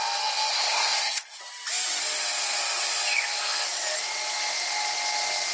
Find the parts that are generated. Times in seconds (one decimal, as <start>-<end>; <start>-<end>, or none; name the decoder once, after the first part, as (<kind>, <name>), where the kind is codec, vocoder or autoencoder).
0.5-1.4 (codec, SNAC)